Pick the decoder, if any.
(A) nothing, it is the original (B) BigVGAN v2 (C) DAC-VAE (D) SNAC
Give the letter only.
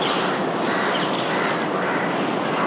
A